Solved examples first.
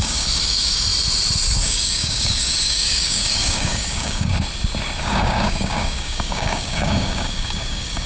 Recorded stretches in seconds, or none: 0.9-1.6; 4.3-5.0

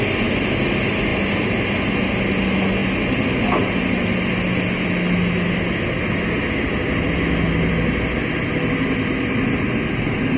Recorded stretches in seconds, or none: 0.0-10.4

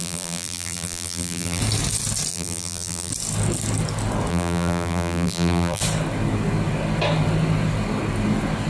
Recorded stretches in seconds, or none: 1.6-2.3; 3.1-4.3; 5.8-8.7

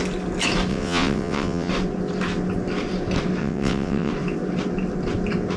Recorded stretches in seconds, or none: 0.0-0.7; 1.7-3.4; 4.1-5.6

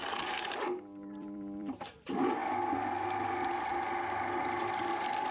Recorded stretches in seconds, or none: 2.4-4.8